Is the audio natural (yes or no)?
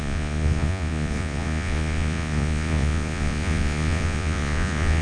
no